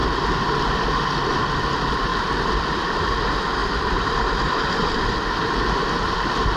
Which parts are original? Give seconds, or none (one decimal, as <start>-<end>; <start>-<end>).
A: 0.0-3.6; 5.1-6.6